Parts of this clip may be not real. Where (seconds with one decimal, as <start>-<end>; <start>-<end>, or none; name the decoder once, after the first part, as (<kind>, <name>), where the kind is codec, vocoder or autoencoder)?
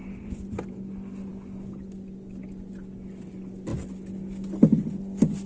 0.0-0.5 (vocoder, BigVGAN v2)